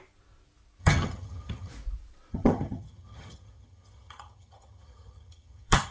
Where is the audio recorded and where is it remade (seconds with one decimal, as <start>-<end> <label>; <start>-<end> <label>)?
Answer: 0.0-0.8 recorded; 0.8-1.7 remade; 1.7-2.3 recorded; 2.3-5.9 remade